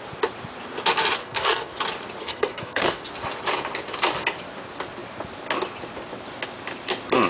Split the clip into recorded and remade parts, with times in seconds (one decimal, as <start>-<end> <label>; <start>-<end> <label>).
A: 0.0-1.2 recorded; 1.2-1.7 remade; 1.7-2.2 recorded; 2.2-3.0 remade; 3.0-7.3 recorded